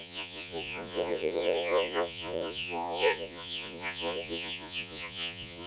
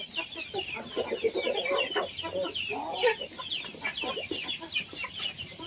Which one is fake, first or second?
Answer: first